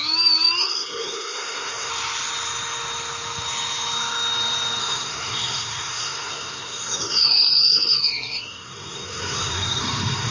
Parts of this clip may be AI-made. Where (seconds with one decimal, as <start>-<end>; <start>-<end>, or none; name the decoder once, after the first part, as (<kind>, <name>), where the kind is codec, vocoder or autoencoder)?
0.6-1.9 (codec, SNAC); 4.8-10.3